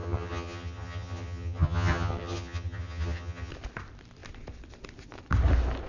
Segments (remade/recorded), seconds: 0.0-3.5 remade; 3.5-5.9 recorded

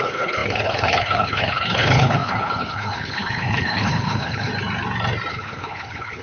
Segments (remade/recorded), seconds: 0.0-4.5 remade; 4.5-5.3 recorded; 5.3-6.2 remade

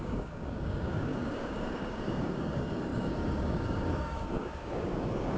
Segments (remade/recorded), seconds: 0.0-5.4 remade

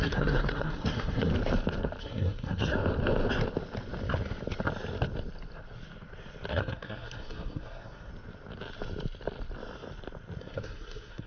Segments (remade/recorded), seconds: 0.0-1.3 remade; 1.3-2.0 recorded; 2.0-2.7 remade; 2.7-6.5 recorded; 6.5-8.1 remade; 8.1-10.4 recorded; 10.4-11.3 remade

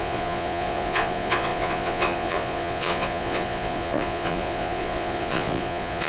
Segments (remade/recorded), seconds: 0.0-6.1 remade

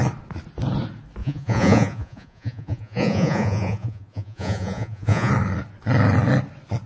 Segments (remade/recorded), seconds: 0.0-1.2 recorded; 1.2-5.3 remade; 5.3-6.9 recorded

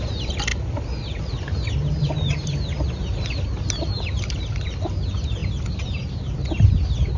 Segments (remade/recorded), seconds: 0.0-7.2 recorded

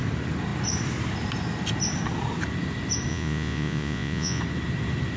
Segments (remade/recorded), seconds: 0.0-3.1 recorded; 3.1-4.4 remade; 4.4-5.2 recorded